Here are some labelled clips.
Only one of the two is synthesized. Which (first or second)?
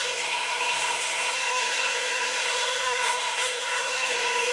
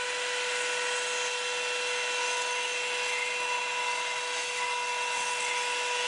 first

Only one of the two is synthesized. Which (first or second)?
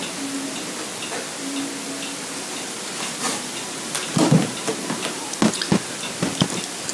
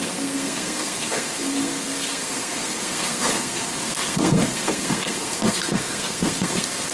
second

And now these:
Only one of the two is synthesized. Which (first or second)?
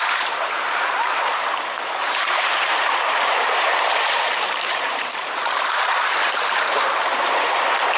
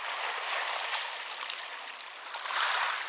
first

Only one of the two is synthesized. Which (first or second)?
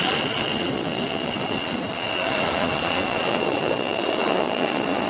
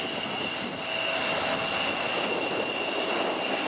first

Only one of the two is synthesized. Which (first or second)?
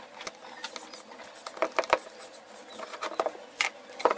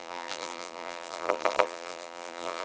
second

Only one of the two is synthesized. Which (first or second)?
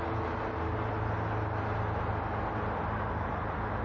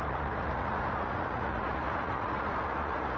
second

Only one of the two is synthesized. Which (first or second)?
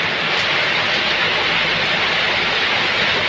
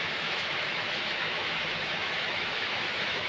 second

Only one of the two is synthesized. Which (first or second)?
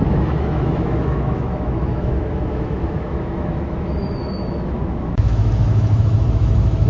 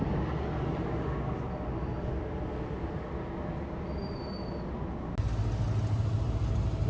first